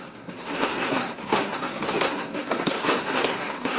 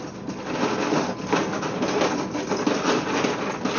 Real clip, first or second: second